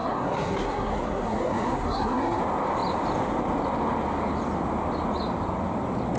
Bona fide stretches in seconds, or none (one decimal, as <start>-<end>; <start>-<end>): 2.4-6.2